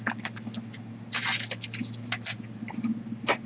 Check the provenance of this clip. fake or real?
real